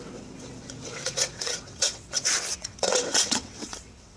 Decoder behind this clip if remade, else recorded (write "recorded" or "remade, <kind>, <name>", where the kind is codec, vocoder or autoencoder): remade, vocoder, WaveNeXt